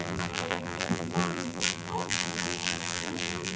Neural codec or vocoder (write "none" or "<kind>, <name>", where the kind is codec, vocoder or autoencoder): vocoder, BigVGAN v2